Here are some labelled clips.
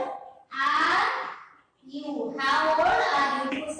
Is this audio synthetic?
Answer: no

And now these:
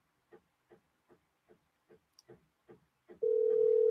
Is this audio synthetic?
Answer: no